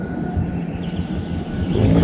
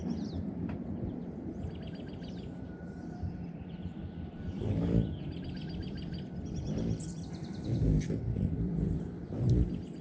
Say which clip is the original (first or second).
first